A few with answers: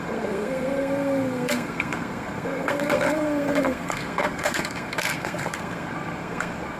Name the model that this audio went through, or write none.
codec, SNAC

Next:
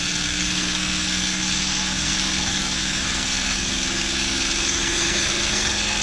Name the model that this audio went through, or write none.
codec, SNAC